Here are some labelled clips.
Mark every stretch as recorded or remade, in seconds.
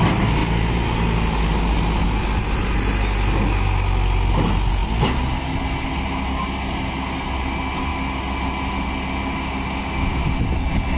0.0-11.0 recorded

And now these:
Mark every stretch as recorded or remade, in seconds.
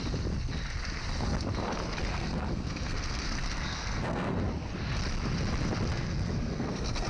0.0-2.1 recorded; 2.1-4.4 remade; 4.4-5.9 recorded; 5.9-7.1 remade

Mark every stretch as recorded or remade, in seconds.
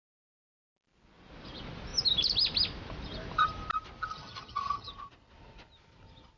0.0-4.1 recorded; 4.1-4.9 remade; 4.9-6.4 recorded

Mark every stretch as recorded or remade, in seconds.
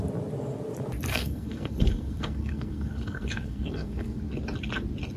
0.0-1.1 recorded; 1.1-4.2 remade; 4.2-5.2 recorded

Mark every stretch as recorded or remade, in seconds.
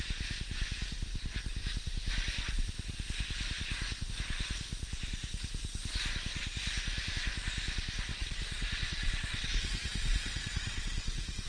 0.0-8.1 recorded; 8.1-11.5 remade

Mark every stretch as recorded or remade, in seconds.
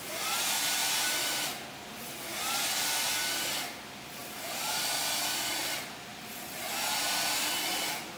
0.0-4.2 recorded; 4.2-5.0 remade; 5.0-8.2 recorded